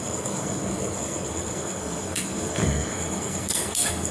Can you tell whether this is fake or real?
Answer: fake